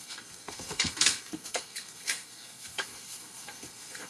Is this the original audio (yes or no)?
no